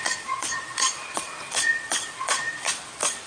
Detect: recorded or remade remade